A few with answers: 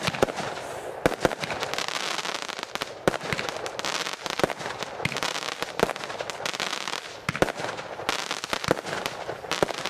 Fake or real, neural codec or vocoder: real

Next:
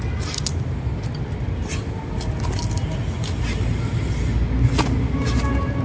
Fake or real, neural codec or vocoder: real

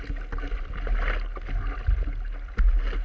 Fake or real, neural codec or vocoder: real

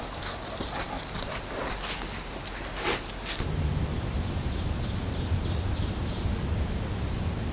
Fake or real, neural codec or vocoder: real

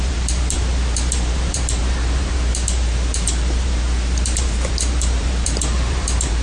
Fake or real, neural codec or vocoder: fake, vocoder, BigVGAN v2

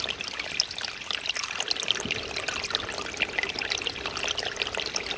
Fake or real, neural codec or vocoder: real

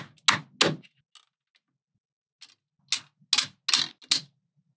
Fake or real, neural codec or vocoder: real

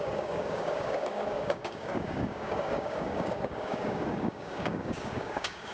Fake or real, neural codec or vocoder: fake, codec, DAC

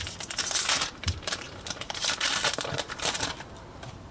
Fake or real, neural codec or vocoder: fake, vocoder, BigVGAN v2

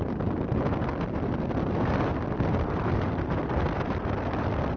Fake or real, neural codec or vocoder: real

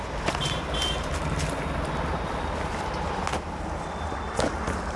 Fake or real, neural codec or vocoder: real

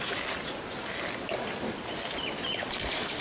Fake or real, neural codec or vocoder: real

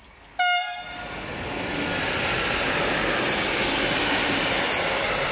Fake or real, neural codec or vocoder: real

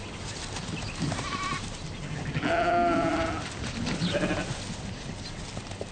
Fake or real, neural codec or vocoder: real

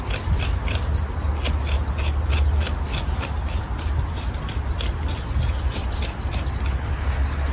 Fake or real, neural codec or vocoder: real